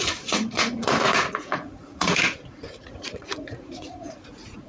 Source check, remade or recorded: remade